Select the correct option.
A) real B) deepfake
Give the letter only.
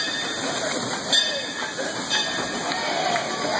A